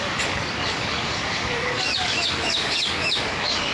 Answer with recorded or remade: remade